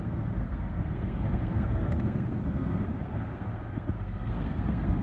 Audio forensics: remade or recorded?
remade